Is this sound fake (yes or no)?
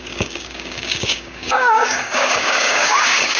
yes